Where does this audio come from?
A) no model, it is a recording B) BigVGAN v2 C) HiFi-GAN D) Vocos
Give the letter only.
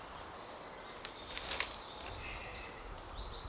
A